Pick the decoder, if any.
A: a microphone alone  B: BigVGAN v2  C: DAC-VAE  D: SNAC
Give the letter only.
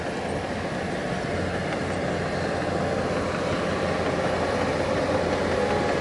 A